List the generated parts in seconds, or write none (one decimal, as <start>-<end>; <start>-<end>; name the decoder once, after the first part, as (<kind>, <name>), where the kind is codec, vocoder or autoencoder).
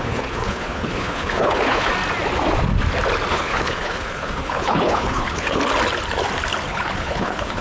0.0-1.9 (codec, HILCodec); 3.3-5.6; 6.7-7.6